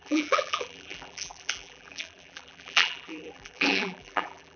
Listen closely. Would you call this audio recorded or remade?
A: remade